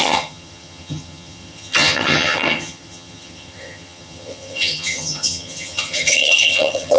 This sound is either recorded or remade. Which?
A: remade